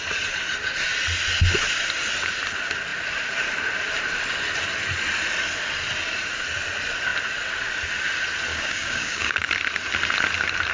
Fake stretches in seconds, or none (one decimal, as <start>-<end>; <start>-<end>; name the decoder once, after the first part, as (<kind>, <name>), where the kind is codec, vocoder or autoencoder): 8.5-9.5 (codec, DAC)